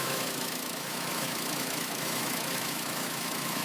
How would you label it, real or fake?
fake